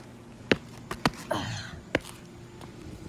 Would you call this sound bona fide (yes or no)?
yes